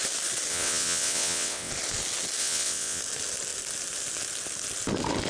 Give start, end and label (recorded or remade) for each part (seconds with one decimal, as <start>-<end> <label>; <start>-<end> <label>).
0.0-0.5 recorded; 0.5-1.7 remade; 1.7-2.4 recorded; 2.4-3.0 remade; 3.0-5.3 recorded